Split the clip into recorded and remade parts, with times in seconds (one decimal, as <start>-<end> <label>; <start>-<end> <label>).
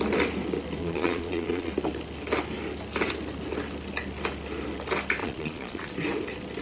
0.0-0.8 recorded; 0.8-1.7 remade; 1.7-5.2 recorded; 5.2-5.9 remade; 5.9-6.6 recorded